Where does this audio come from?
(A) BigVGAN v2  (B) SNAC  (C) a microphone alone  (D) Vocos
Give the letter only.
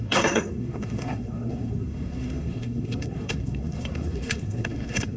B